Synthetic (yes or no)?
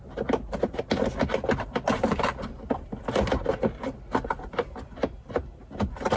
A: no